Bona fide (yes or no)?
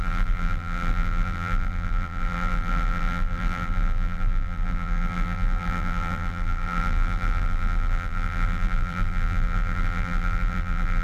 no